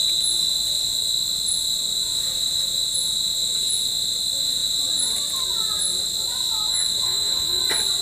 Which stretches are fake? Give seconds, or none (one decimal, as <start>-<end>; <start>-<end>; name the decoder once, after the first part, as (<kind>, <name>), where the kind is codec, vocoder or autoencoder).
6.7-7.6 (autoencoder, DAC-VAE)